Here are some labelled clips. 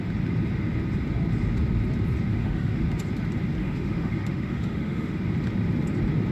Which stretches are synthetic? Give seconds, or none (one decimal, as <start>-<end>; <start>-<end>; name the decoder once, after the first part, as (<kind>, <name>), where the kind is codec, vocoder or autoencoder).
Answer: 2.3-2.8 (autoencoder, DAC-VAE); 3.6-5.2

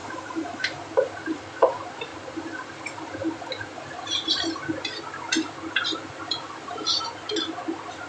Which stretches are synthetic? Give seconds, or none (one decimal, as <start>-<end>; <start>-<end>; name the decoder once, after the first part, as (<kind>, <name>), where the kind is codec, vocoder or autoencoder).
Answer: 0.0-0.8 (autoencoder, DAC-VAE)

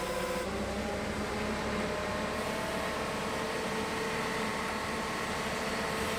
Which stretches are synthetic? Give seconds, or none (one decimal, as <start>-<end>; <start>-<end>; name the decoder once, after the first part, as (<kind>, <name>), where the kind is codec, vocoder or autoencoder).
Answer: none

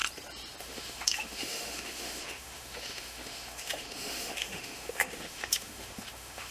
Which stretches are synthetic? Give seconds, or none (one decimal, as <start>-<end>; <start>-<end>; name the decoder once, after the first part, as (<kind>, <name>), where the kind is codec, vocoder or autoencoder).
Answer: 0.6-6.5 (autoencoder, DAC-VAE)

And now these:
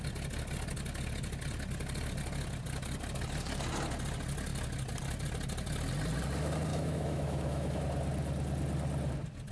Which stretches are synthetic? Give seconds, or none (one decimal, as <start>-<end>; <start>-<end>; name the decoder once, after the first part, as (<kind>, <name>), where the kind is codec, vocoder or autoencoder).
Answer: 6.7-7.8 (autoencoder, DAC-VAE)

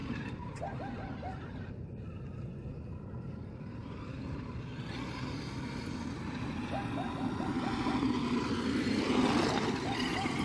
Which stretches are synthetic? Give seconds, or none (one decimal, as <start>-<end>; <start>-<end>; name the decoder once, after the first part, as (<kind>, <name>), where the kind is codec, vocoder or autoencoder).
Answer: none